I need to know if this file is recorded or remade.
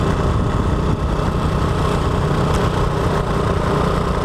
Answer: recorded